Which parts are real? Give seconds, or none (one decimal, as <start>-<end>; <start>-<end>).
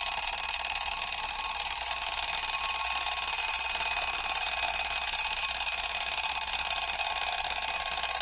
0.0-8.2